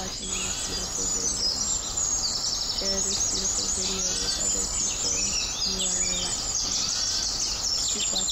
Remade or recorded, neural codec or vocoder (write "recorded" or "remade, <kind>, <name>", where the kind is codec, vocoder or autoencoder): recorded